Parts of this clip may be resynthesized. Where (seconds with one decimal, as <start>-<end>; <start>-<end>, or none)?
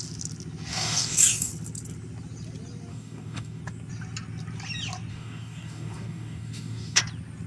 0.7-1.5; 2.9-3.6; 5.1-7.0